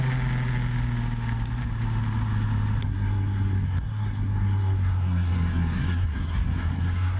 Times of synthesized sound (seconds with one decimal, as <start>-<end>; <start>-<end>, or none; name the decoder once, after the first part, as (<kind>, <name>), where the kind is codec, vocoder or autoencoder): 2.8-7.2 (codec, SNAC)